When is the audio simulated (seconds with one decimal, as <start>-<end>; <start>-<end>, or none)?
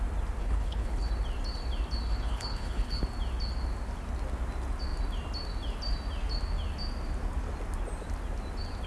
0.4-1.1; 2.1-3.0